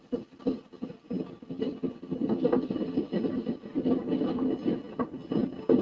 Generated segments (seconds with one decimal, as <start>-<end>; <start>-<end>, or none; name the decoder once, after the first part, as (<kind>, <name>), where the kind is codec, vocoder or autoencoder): none